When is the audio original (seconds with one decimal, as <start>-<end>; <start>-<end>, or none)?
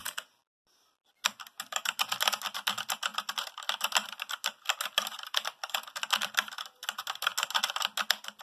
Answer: 0.0-8.4